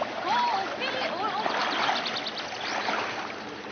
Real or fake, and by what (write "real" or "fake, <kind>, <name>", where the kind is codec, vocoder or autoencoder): real